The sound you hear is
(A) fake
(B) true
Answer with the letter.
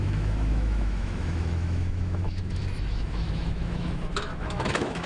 A